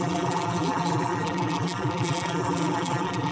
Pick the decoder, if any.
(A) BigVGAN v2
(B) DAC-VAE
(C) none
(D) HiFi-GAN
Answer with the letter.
A